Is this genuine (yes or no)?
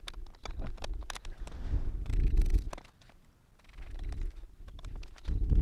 yes